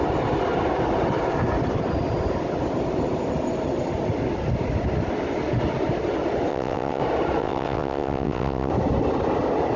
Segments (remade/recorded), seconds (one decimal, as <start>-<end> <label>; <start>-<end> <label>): 0.0-6.5 recorded; 6.5-7.0 remade; 7.0-7.4 recorded; 7.4-8.7 remade; 8.7-9.8 recorded